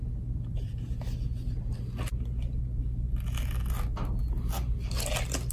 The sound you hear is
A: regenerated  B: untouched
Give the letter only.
B